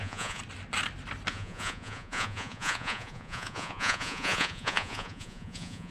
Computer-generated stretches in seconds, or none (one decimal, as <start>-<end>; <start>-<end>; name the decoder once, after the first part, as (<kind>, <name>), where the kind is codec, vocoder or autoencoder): 0.0-0.4 (vocoder, Vocos); 1.3-5.9